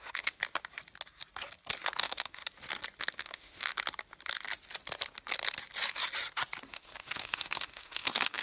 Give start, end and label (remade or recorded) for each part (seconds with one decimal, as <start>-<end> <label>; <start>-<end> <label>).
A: 0.0-0.4 remade; 0.4-2.0 recorded; 2.0-2.4 remade; 2.4-3.0 recorded; 3.0-3.7 remade; 3.7-6.7 recorded; 6.7-8.4 remade